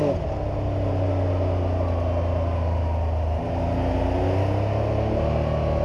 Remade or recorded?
recorded